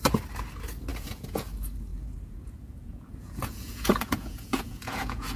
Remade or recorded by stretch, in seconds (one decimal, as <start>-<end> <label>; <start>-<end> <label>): 0.0-0.9 recorded; 0.9-1.5 remade; 1.5-1.9 recorded; 1.9-5.4 remade